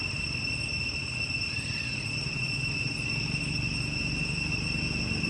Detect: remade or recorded recorded